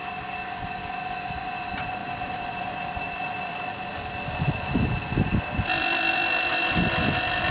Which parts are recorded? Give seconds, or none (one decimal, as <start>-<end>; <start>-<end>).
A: 0.0-2.0; 6.5-7.5